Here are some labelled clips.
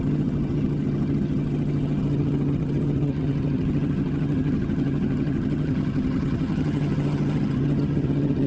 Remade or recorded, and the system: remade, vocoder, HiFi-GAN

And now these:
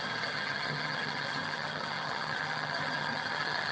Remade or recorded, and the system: remade, vocoder, HiFi-GAN